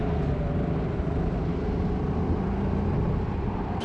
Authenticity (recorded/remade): recorded